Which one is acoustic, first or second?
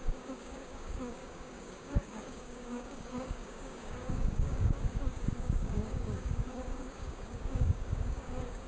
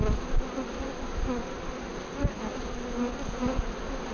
second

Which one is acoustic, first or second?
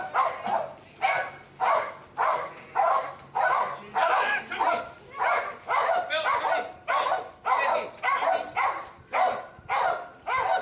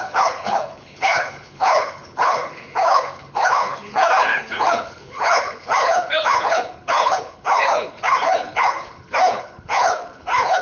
first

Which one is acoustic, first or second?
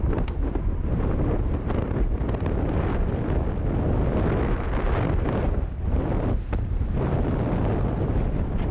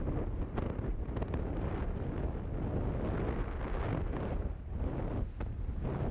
second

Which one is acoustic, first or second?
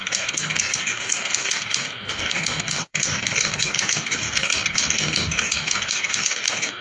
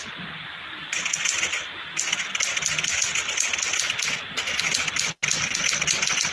second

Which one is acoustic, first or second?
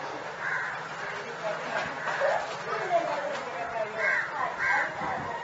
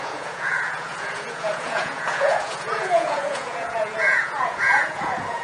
first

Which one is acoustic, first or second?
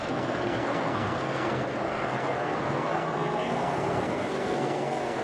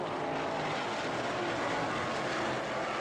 second